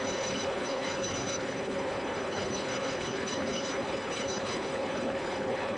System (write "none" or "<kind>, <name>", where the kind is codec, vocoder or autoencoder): codec, HILCodec